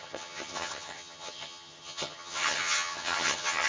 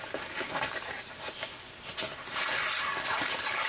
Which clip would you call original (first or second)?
second